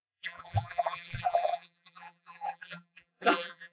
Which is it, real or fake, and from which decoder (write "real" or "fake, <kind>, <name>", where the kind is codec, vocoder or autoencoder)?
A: fake, vocoder, BigVGAN v2